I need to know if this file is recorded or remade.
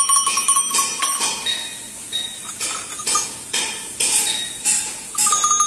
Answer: recorded